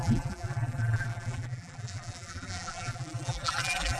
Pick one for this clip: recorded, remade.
remade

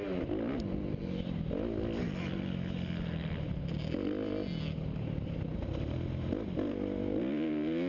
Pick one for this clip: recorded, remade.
recorded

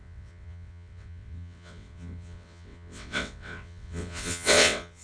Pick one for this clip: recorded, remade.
remade